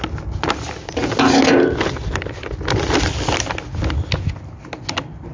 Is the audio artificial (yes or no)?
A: no